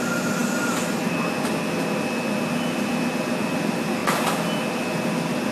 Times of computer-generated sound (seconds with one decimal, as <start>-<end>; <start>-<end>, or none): none